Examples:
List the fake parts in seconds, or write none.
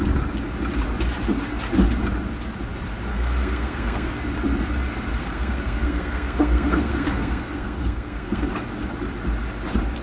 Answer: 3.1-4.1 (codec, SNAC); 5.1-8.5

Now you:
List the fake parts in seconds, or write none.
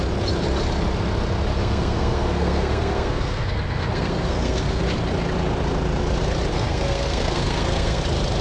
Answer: 1.5-4.8 (codec, SNAC); 6.5-8.0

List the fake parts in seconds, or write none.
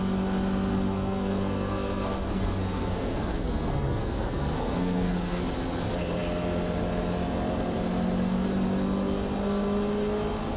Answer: 0.7-5.4 (codec, SNAC)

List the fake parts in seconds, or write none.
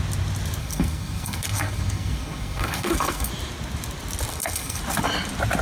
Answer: 0.6-3.3 (codec, SNAC); 4.3-4.8